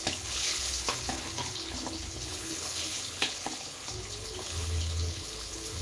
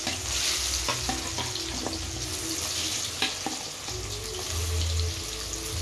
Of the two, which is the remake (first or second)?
first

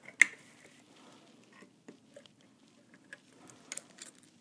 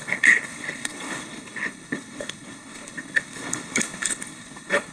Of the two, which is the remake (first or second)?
second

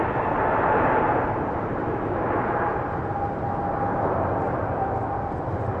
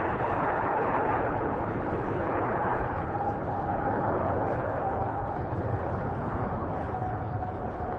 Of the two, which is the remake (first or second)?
second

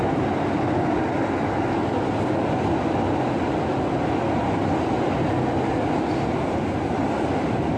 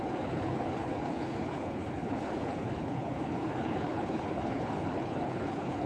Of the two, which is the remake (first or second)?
second